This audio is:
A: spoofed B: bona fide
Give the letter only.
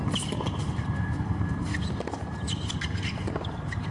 B